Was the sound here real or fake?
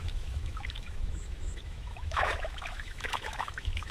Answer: fake